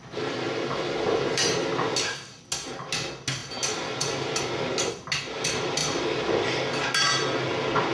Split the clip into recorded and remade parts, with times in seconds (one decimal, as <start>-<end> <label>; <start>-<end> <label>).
0.0-5.8 recorded; 5.8-6.5 remade; 6.5-7.9 recorded